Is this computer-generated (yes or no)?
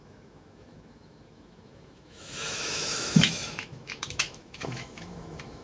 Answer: yes